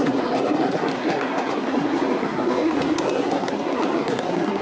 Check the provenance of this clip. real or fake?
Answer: fake